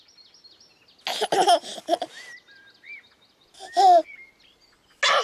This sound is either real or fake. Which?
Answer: real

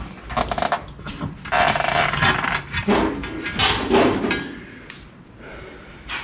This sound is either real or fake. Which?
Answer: real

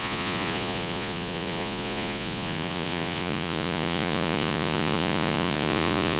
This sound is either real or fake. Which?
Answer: fake